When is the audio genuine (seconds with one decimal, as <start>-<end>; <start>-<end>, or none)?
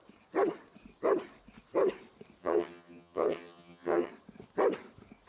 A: 0.0-2.4; 4.1-5.3